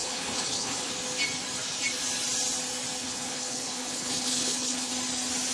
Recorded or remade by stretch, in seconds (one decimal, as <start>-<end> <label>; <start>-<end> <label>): 0.0-0.9 remade; 0.9-3.0 recorded; 3.0-4.9 remade; 4.9-5.5 recorded